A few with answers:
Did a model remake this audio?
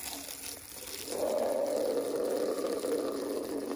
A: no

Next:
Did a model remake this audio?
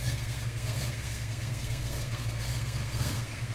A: yes